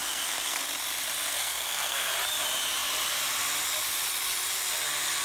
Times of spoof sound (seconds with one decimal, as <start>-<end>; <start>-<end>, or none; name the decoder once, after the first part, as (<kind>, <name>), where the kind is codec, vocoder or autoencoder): 0.0-0.6 (codec, SNAC); 1.3-2.1